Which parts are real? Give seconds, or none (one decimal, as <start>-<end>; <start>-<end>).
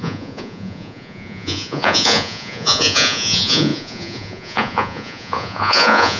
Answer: none